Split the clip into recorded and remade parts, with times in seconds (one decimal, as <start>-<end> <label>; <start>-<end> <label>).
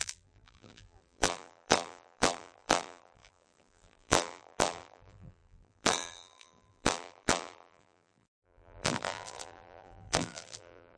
0.0-11.0 remade